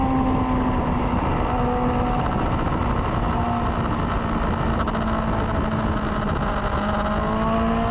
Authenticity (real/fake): real